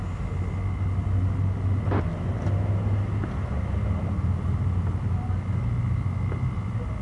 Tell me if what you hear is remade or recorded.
recorded